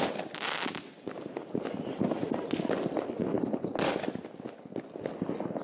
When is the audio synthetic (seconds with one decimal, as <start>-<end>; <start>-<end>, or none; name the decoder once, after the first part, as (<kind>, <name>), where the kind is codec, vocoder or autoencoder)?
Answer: none